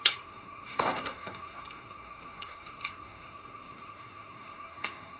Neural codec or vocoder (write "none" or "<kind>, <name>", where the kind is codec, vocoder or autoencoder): codec, SNAC